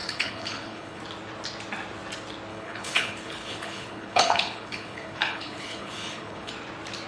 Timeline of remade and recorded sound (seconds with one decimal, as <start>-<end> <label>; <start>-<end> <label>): 0.0-1.0 remade; 1.0-2.5 recorded; 2.5-6.5 remade; 6.5-7.1 recorded